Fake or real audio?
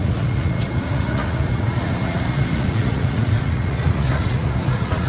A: fake